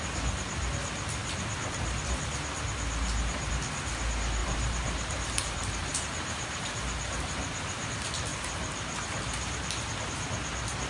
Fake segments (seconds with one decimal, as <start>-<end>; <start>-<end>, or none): 4.4-7.9